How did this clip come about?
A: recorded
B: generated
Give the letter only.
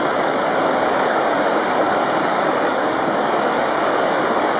B